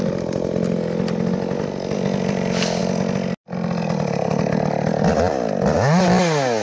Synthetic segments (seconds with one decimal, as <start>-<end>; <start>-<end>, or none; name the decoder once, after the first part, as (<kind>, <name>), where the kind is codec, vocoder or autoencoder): none